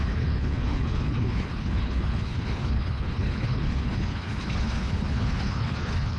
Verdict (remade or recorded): remade